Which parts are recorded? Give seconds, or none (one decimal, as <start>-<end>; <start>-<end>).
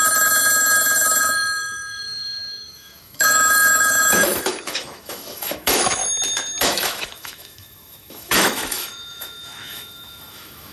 0.0-1.2; 6.0-6.6